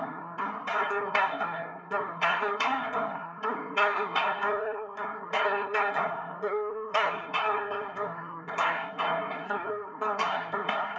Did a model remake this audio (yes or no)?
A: yes